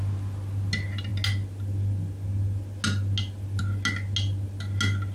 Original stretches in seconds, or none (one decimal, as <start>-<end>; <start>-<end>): 0.0-5.1